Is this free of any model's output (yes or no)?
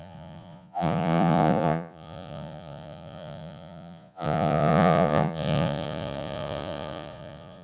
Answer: no